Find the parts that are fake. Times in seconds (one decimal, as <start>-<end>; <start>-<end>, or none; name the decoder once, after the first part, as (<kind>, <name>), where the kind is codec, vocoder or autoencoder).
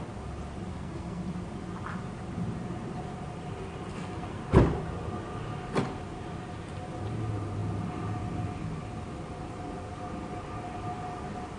0.7-1.2 (codec, SNAC); 3.9-4.4